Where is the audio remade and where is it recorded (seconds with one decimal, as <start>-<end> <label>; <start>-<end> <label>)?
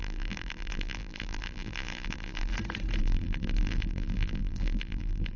0.0-2.5 remade; 2.5-3.0 recorded; 3.0-5.4 remade